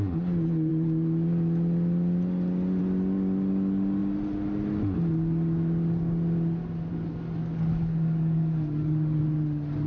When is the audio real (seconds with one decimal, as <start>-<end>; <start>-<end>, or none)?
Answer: 0.0-7.4; 9.2-9.9